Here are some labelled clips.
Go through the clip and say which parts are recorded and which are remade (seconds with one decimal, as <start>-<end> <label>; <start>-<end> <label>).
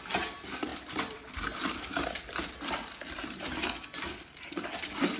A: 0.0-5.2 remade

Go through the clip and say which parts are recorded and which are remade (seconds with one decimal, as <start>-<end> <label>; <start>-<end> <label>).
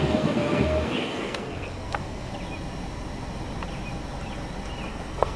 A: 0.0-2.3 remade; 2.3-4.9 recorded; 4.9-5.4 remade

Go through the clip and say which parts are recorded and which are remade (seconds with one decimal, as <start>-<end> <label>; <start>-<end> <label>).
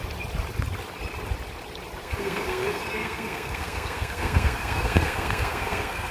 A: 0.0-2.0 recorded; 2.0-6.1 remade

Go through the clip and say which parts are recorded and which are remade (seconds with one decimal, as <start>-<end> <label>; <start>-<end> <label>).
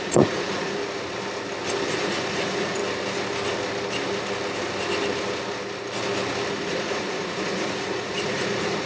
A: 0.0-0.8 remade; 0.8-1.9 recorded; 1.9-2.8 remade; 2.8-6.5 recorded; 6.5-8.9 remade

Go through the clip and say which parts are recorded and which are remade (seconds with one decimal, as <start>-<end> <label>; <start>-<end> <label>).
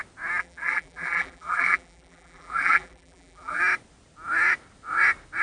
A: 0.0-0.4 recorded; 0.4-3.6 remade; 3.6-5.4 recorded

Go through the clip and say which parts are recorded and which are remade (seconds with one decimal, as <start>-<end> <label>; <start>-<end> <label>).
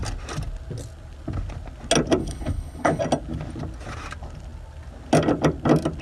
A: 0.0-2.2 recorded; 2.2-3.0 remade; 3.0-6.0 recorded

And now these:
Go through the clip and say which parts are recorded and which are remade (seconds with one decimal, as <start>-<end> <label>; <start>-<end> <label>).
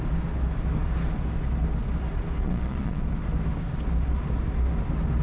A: 0.0-2.4 recorded; 2.4-3.0 remade; 3.0-5.2 recorded